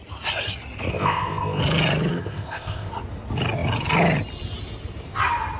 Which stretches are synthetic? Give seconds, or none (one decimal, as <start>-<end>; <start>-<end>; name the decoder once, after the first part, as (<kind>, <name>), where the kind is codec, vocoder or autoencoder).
0.9-1.6 (codec, ZipCodec); 2.1-2.9